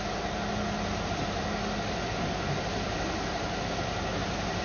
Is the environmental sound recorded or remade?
recorded